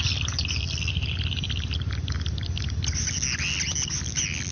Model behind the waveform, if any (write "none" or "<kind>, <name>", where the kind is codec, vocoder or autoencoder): none